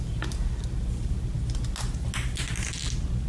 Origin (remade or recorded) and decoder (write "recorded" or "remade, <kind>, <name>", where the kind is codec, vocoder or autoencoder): recorded